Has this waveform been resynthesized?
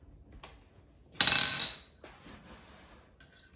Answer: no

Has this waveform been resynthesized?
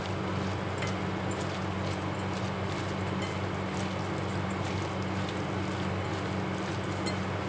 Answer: no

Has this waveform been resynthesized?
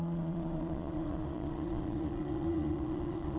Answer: yes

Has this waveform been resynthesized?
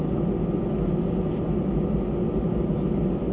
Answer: no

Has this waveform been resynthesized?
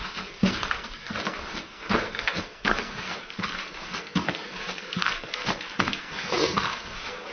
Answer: yes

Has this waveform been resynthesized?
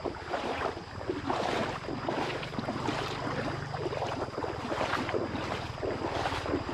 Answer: yes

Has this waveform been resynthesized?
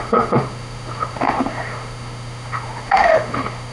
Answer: yes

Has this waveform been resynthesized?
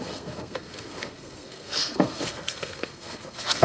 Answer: yes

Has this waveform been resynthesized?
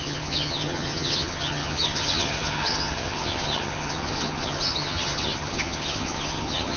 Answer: yes